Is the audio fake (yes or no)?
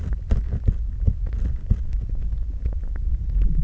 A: no